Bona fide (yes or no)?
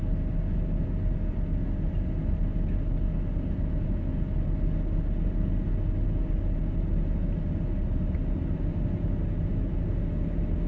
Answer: yes